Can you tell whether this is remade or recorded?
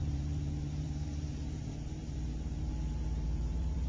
remade